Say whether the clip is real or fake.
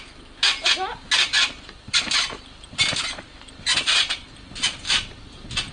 real